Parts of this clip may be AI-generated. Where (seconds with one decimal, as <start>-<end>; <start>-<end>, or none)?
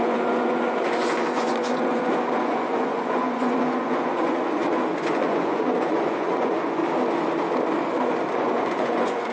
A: 0.0-6.8; 8.3-9.3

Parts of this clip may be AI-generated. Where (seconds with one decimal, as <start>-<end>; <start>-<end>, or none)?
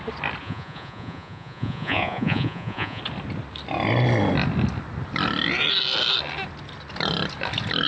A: 0.4-3.0